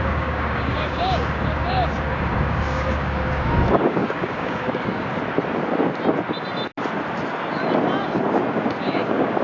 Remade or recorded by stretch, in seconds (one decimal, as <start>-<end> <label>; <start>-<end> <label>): 0.0-5.1 remade; 5.1-8.5 recorded; 8.5-9.4 remade